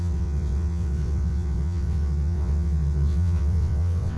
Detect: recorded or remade remade